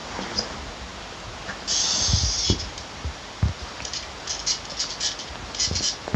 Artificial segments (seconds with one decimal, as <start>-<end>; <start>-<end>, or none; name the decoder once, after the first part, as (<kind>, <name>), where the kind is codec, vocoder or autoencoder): none